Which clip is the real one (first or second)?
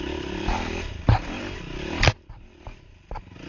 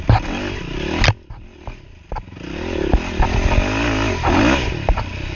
second